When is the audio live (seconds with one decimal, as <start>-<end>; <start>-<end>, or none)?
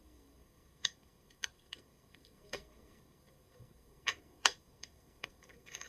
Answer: none